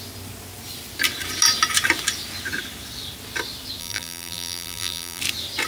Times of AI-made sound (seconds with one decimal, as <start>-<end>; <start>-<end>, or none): 3.8-5.2

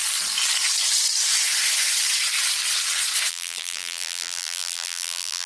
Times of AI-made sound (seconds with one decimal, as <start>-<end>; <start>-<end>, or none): 3.3-5.5